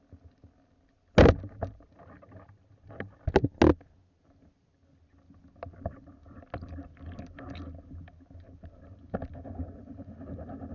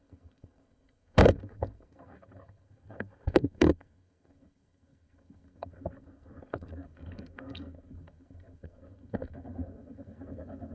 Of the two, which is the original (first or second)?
first